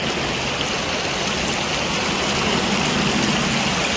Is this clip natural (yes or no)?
yes